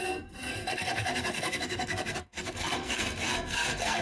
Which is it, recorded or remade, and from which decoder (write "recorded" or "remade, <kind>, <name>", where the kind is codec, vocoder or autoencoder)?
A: remade, codec, SNAC